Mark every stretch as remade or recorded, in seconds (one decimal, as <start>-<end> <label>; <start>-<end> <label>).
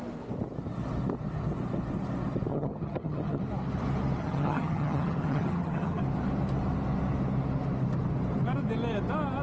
0.0-2.5 recorded; 2.5-3.4 remade; 3.4-4.2 recorded; 4.2-6.0 remade; 6.0-9.4 recorded